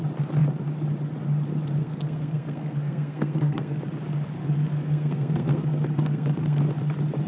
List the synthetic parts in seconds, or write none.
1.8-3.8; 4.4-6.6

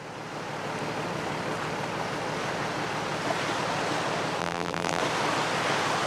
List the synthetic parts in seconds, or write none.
4.4-5.0

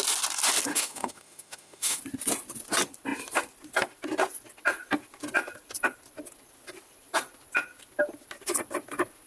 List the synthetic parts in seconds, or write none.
0.7-2.0